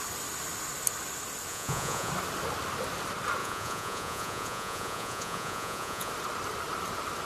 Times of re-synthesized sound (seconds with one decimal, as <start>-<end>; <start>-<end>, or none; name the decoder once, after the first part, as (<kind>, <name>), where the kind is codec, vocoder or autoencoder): 1.5-2.1 (vocoder, Vocos); 3.4-6.1